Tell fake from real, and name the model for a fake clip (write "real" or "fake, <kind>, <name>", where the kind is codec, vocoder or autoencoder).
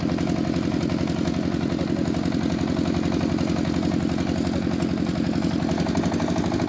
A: real